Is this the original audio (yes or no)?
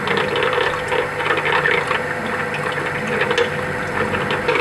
yes